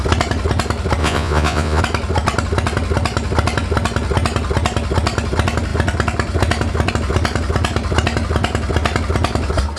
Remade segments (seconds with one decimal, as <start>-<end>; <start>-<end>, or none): 1.0-1.8